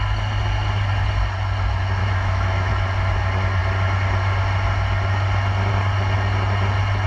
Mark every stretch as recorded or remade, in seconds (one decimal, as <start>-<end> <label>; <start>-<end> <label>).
0.0-2.0 recorded; 2.0-2.7 remade; 2.7-7.1 recorded